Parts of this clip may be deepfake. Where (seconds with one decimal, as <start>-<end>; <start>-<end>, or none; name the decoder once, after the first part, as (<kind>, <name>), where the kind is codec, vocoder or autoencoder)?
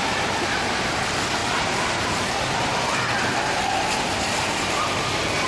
1.4-2.3 (vocoder, BigVGAN v2)